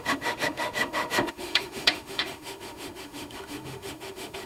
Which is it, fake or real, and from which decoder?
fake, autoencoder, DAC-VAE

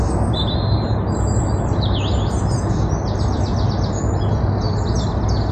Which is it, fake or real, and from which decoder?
real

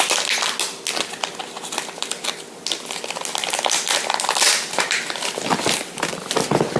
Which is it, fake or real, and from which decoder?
real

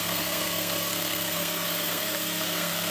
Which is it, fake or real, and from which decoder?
fake, codec, SNAC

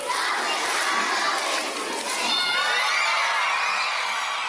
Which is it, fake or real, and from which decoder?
real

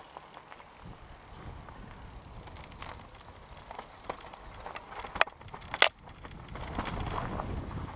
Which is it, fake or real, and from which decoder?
real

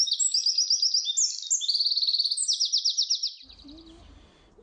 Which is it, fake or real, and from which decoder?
real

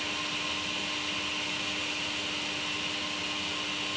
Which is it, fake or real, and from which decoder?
real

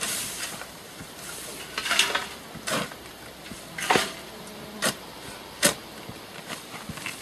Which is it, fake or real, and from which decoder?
real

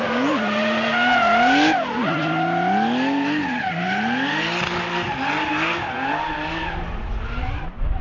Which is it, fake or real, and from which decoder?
real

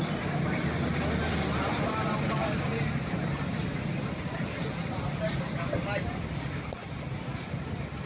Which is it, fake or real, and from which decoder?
real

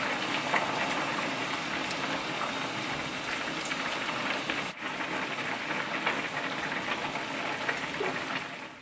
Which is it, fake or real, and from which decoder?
real